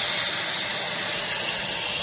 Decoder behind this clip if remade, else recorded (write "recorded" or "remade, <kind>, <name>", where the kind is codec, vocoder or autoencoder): recorded